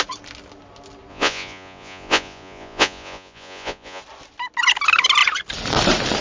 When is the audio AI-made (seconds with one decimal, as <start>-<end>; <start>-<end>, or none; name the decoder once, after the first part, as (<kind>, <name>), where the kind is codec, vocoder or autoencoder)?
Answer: 1.1-4.0 (vocoder, Vocos)